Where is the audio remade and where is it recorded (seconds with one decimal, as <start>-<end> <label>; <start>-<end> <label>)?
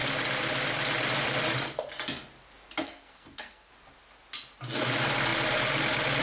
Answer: 0.0-2.8 recorded; 2.8-3.7 remade; 3.7-6.2 recorded